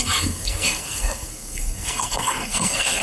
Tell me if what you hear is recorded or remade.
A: remade